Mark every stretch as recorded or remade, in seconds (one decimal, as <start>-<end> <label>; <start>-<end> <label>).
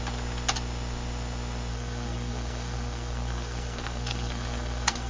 0.0-1.7 recorded; 1.7-5.1 remade